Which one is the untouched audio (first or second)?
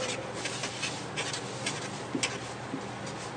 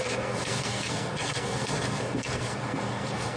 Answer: first